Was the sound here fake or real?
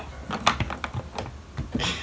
real